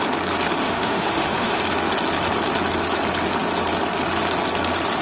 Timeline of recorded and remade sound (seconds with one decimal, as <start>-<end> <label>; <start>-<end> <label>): 0.0-0.6 recorded; 0.6-1.6 remade; 1.6-5.0 recorded